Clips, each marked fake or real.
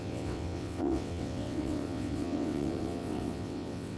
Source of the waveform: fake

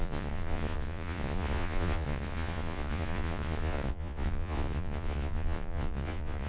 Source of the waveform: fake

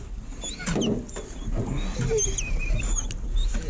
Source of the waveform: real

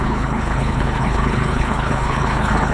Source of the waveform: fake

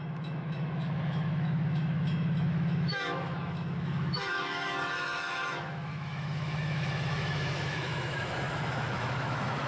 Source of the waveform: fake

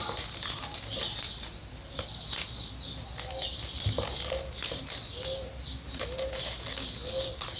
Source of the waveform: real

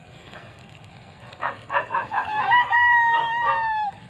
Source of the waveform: fake